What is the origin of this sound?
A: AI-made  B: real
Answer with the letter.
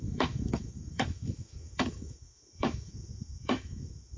A